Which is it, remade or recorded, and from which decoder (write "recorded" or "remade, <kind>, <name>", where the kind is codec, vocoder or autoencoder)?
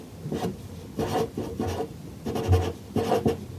recorded